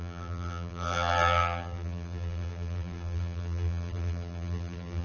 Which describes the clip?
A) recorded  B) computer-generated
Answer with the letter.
B